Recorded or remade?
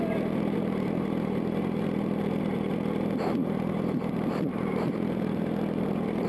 remade